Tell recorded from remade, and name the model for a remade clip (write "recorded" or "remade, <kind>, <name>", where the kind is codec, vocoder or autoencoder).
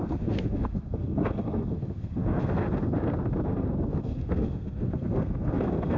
remade, codec, SNAC